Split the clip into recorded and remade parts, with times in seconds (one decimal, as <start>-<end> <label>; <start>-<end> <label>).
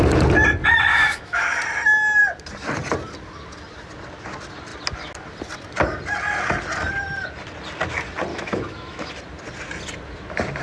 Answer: 0.0-0.9 recorded; 0.9-1.6 remade; 1.6-8.3 recorded; 8.3-9.1 remade; 9.1-10.6 recorded